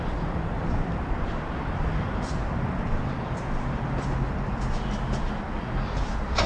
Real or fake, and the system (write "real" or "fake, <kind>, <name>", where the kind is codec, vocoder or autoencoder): fake, vocoder, BigVGAN v2